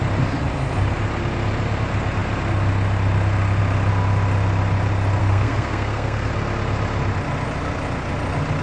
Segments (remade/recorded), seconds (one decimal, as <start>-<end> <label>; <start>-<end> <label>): 0.0-5.2 recorded; 5.2-6.3 remade; 6.3-8.6 recorded